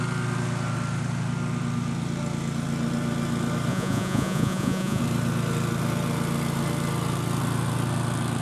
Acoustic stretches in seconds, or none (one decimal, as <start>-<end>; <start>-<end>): 0.0-3.7; 5.0-8.4